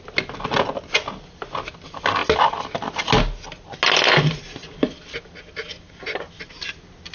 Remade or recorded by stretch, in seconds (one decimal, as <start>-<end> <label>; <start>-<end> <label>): 0.0-7.1 recorded